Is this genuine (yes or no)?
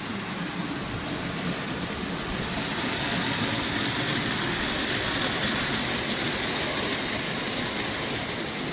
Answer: yes